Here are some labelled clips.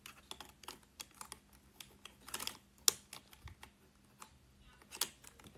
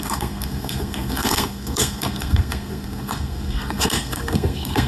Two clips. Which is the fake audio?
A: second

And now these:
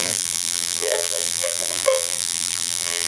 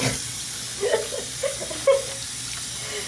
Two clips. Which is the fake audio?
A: first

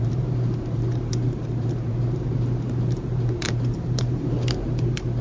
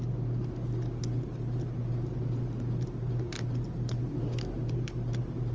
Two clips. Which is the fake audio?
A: first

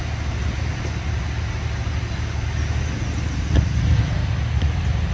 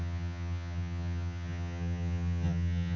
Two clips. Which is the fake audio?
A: second